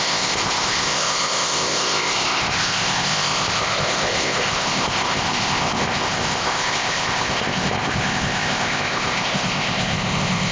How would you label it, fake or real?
fake